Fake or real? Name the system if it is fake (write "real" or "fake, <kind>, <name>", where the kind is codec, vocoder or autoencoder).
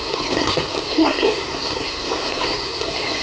fake, codec, SNAC